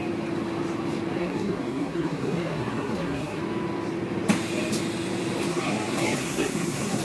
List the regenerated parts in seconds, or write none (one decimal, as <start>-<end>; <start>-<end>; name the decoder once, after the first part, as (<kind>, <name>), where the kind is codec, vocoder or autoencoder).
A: 1.2-3.4 (codec, SNAC); 5.5-7.0